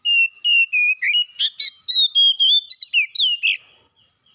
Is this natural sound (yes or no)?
yes